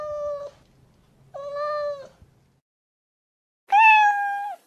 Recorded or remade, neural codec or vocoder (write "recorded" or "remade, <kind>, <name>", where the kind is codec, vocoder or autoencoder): recorded